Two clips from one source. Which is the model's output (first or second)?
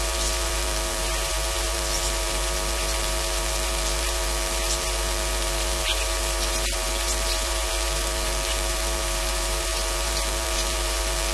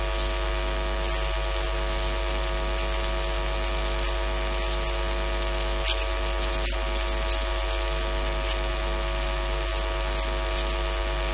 first